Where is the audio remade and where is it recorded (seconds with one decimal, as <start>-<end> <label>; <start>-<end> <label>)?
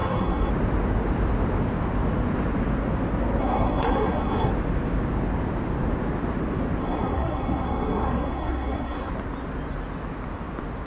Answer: 0.0-0.5 remade; 0.5-3.4 recorded; 3.4-4.5 remade; 4.5-6.8 recorded; 6.8-9.1 remade; 9.1-10.9 recorded